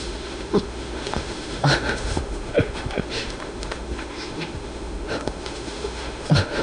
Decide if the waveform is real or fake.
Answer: fake